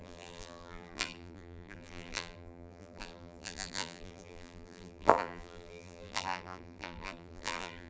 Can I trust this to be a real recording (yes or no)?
no